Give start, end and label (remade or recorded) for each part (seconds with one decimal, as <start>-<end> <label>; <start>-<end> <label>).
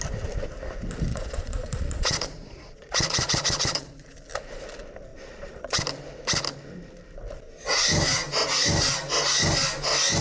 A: 0.0-1.1 recorded; 1.1-4.1 remade; 4.1-5.1 recorded; 5.1-5.8 remade; 5.8-10.2 recorded